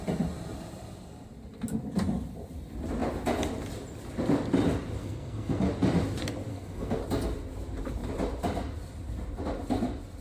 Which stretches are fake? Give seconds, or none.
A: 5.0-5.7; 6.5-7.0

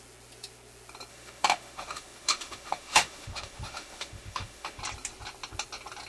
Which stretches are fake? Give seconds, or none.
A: 1.1-4.8

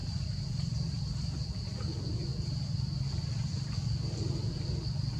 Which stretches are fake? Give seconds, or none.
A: 0.0-1.0; 2.3-3.7

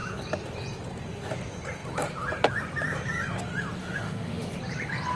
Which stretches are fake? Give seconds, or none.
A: 3.8-4.6

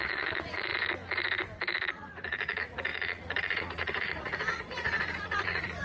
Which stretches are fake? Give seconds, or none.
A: 0.0-0.7; 1.9-5.8

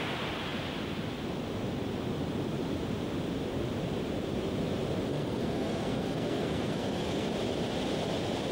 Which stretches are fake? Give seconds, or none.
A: 5.1-7.3

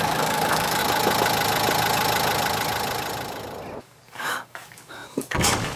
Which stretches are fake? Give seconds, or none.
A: 0.0-0.8; 3.8-5.8

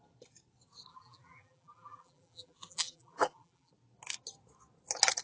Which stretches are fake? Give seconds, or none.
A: 0.9-3.7